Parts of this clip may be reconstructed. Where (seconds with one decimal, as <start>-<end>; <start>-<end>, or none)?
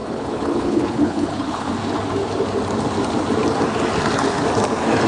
0.0-1.7